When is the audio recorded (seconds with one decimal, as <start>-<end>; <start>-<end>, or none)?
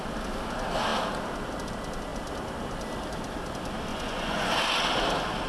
0.0-3.9; 4.5-5.5